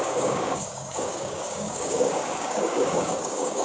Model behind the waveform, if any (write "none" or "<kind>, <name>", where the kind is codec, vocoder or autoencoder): codec, DAC